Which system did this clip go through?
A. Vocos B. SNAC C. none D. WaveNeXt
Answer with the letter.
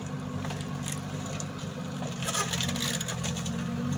C